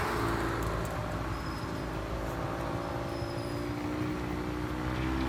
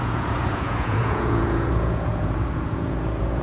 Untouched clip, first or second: first